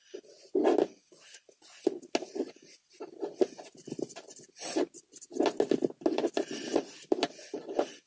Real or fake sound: real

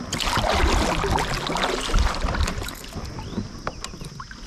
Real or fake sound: real